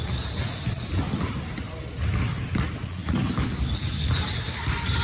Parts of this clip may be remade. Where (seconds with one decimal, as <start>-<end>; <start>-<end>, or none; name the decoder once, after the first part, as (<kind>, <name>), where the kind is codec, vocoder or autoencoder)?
2.8-3.3 (vocoder, Vocos)